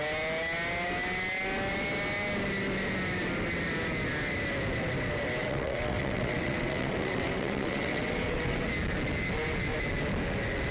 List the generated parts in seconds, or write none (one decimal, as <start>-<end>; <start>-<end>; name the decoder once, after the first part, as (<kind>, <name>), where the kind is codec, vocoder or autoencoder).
5.4-8.7 (vocoder, WaveNeXt)